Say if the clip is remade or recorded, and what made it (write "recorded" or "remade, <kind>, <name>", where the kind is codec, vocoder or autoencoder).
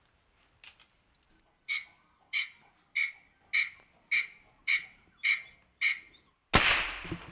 recorded